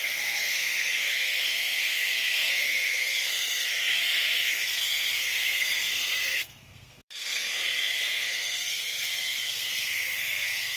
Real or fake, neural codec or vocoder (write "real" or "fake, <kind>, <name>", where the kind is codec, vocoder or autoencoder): fake, codec, SNAC